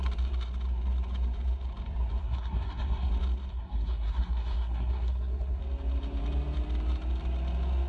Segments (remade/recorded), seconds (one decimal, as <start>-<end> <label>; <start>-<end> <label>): 0.0-2.2 recorded; 2.2-3.1 remade; 3.1-3.5 recorded; 3.5-5.6 remade; 5.6-7.9 recorded